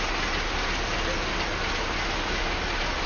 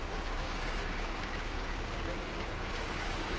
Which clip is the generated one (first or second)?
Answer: second